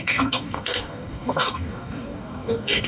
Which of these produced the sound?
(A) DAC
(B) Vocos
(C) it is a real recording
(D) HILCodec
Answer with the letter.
A